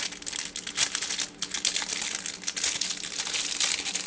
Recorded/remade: recorded